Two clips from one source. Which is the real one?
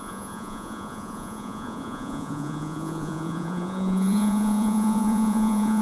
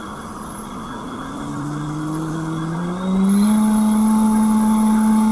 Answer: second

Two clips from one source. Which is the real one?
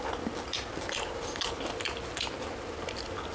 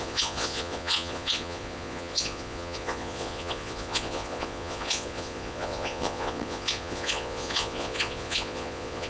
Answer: first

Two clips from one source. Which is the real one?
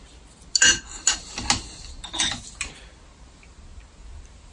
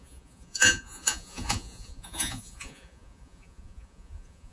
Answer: first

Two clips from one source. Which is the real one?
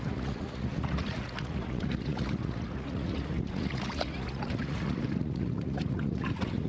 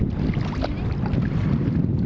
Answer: second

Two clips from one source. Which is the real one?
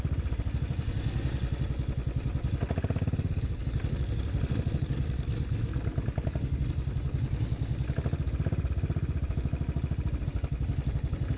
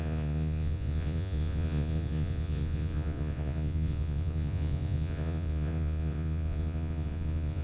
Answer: first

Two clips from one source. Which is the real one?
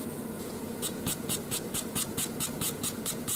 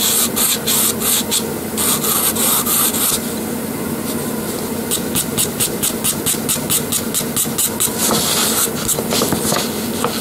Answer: second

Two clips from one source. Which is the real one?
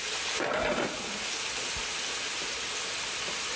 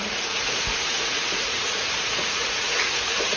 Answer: first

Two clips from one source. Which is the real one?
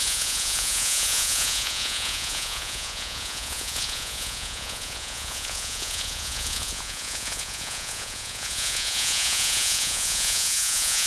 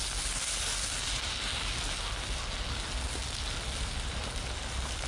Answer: second